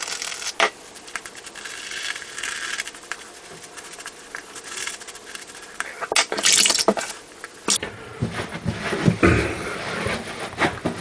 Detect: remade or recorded recorded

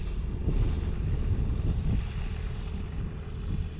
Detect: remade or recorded recorded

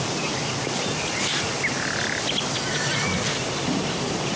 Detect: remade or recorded recorded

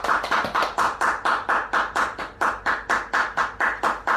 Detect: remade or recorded recorded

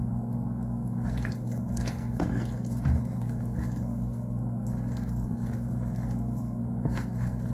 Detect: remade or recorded remade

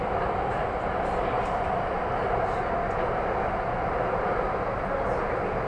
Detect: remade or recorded recorded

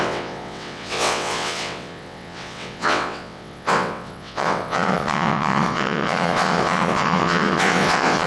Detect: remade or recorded remade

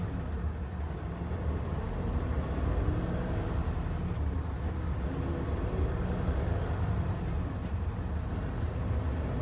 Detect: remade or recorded recorded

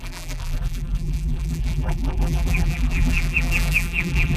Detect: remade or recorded remade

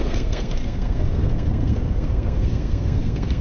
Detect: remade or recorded remade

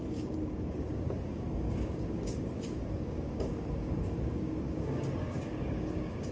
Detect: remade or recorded remade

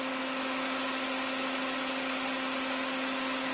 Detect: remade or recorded recorded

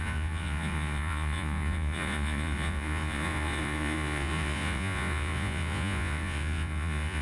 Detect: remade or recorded remade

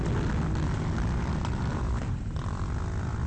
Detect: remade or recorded recorded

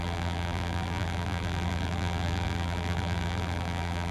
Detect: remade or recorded remade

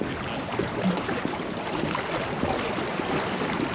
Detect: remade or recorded recorded